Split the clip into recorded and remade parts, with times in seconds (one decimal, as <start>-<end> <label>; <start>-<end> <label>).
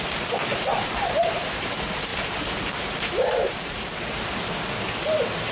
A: 0.0-0.5 recorded; 0.5-1.2 remade; 1.2-2.1 recorded; 2.1-4.0 remade; 4.0-5.5 recorded